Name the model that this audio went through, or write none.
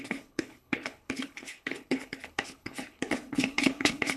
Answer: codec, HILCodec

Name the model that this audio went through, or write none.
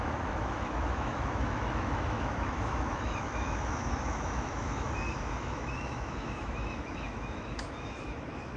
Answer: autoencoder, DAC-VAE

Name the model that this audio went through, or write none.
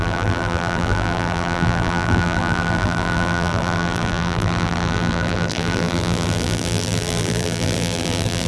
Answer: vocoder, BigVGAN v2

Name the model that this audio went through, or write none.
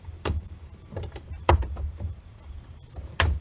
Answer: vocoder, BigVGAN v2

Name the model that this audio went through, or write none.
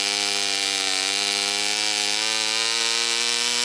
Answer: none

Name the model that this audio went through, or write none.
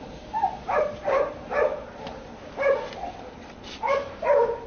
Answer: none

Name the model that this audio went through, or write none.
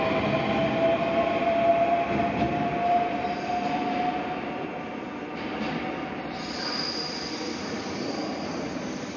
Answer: none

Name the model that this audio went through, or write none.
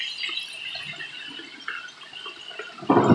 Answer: none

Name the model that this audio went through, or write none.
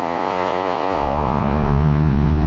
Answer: vocoder, Vocos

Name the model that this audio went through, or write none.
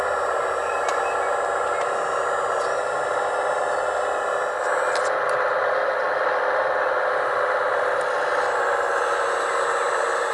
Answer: none